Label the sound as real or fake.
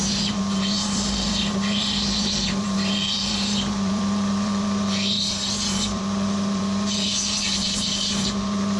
fake